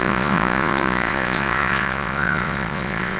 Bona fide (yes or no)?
no